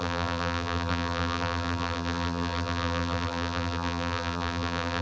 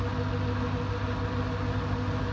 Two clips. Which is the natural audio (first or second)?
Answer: second